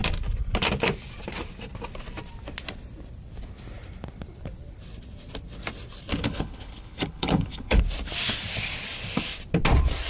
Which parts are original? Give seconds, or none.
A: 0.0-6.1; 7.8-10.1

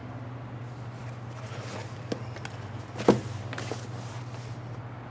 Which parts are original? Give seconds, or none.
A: 0.0-5.1

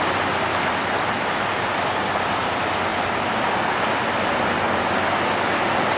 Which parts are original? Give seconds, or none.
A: 0.0-6.0